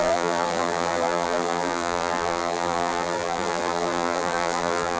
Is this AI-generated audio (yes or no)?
yes